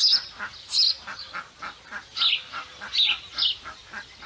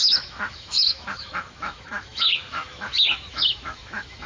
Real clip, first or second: first